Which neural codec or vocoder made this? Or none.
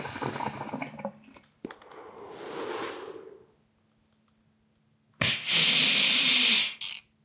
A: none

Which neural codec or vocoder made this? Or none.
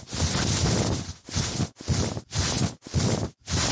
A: none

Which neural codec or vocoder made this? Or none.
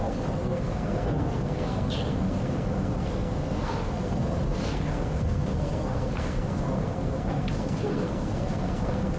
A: codec, SNAC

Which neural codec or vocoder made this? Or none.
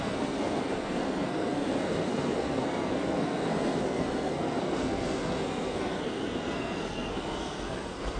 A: codec, SNAC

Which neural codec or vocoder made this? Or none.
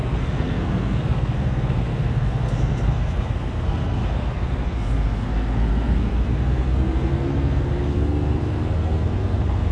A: codec, SNAC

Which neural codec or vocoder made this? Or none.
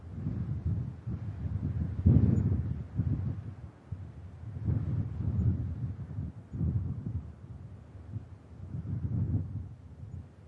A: none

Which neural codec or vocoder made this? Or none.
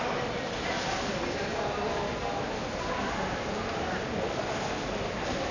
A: none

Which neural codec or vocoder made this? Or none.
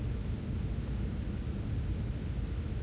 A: none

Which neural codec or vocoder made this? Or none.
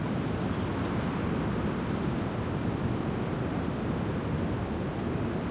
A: none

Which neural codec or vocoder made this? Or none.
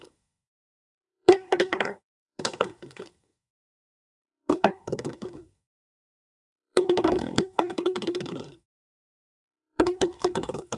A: codec, SNAC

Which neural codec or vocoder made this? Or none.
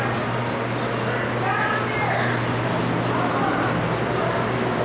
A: none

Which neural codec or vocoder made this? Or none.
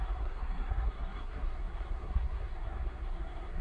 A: codec, SNAC